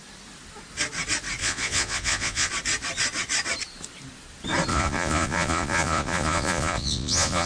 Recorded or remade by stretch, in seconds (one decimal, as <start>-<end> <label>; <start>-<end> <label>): 0.0-1.4 recorded; 1.4-2.5 remade; 2.5-4.7 recorded; 4.7-7.5 remade